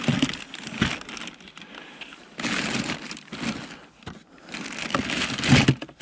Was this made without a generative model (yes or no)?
yes